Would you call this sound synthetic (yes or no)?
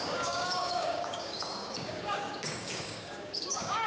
yes